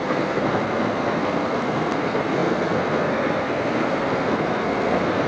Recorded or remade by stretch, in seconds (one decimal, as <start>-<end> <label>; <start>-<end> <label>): 0.0-5.3 remade